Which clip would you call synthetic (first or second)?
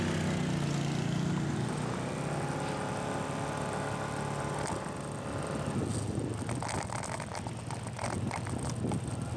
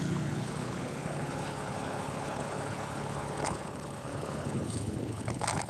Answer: second